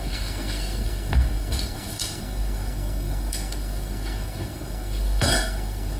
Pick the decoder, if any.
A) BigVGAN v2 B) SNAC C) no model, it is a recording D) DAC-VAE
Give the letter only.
B